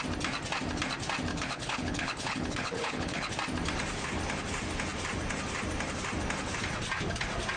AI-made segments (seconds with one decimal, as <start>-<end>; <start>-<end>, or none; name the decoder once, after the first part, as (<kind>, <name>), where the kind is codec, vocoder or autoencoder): 1.3-3.3 (codec, HILCodec)